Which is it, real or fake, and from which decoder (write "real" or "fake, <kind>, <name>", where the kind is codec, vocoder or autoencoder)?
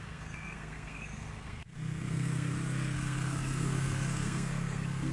fake, codec, SNAC